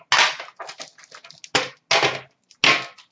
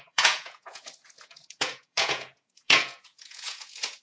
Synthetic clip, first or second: second